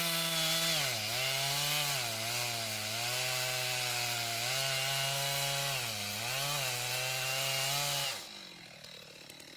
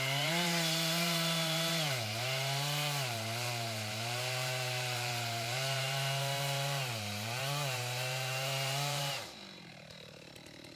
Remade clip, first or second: second